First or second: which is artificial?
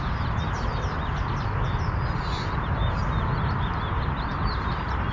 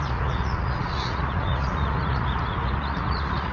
second